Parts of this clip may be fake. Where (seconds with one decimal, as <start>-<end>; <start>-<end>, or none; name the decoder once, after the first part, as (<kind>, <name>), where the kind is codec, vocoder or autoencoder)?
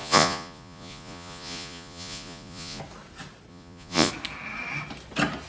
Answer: 0.0-2.8 (vocoder, Vocos); 3.5-4.1